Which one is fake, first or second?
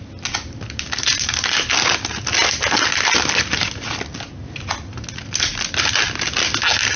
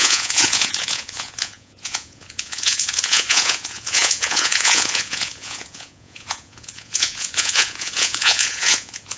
second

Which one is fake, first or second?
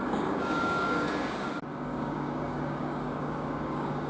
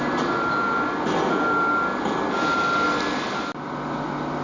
first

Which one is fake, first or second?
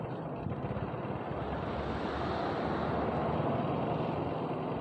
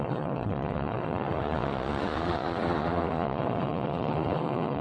second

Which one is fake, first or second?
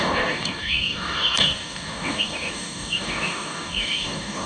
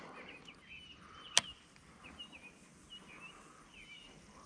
first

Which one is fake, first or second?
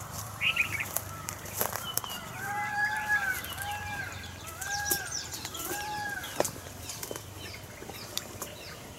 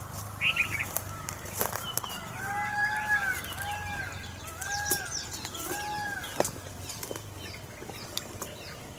first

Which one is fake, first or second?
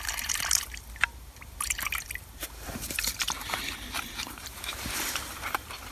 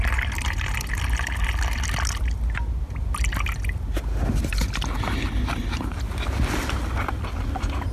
first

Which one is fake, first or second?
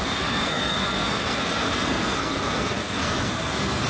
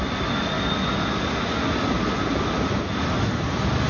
first